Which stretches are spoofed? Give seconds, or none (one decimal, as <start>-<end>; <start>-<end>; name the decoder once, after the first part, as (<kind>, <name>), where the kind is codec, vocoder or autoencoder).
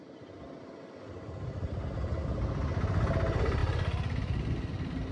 none